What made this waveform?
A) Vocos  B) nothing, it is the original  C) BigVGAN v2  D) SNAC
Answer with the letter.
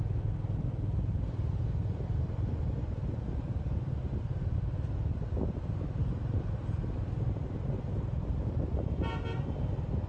B